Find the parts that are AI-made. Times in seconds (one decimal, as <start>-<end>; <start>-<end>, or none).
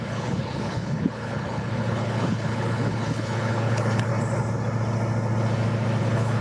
0.0-4.1; 6.0-6.4